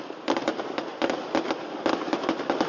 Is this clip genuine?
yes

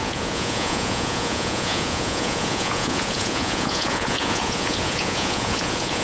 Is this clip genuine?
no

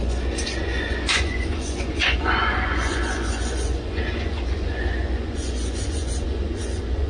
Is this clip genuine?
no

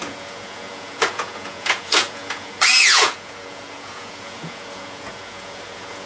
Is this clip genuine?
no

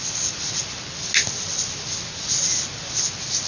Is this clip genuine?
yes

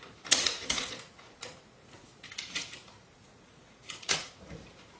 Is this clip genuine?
no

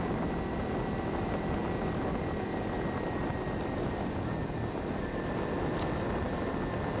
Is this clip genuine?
yes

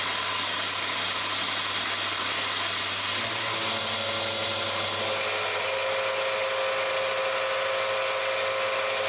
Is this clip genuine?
yes